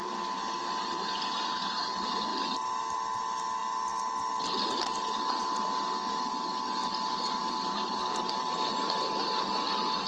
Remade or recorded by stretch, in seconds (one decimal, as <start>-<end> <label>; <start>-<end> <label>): 0.0-7.4 recorded; 7.4-8.4 remade; 8.4-10.1 recorded